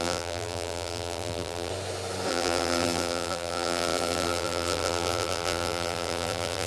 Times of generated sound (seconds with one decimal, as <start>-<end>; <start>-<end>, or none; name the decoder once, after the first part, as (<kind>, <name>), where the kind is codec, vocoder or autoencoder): 0.0-1.7 (vocoder, BigVGAN v2); 2.3-6.7